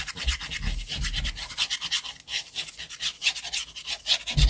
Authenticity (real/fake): real